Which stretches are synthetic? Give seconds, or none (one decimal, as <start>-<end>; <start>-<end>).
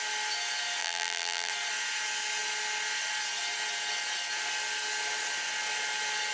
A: 0.8-1.5